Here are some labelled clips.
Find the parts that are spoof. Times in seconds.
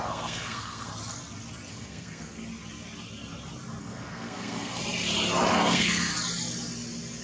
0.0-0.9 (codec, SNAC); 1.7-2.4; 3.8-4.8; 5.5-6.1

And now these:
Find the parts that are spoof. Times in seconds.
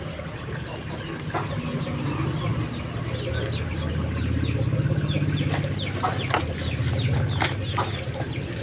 none